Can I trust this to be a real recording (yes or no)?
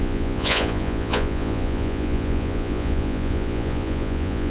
no